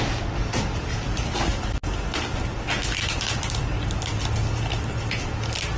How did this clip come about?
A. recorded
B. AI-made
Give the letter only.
A